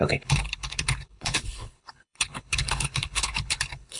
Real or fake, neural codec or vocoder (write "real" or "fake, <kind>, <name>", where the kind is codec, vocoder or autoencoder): fake, codec, HILCodec